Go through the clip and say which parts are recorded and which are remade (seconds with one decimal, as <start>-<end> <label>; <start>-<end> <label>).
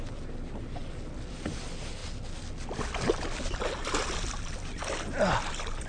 0.0-5.9 recorded